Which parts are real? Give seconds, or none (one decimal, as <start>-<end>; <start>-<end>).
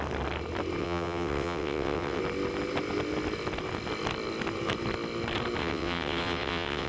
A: 0.0-0.8; 2.2-5.6